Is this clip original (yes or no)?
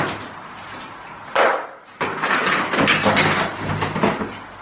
yes